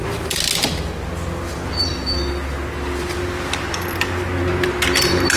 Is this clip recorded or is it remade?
recorded